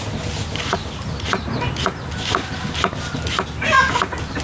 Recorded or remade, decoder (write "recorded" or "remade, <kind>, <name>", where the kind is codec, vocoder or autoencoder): recorded